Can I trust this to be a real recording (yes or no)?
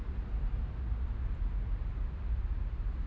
yes